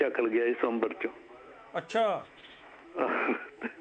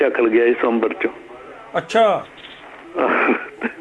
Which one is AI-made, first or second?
first